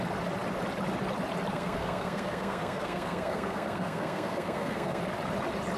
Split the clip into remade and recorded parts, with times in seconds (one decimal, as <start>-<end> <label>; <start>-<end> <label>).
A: 0.0-1.5 recorded; 1.5-5.0 remade; 5.0-5.8 recorded